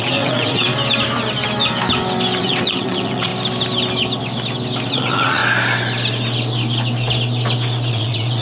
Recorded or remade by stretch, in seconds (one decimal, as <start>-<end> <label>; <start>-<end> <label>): 0.0-0.7 remade; 0.7-2.4 recorded; 2.4-3.3 remade; 3.3-4.9 recorded; 4.9-5.4 remade; 5.4-7.9 recorded; 7.9-8.4 remade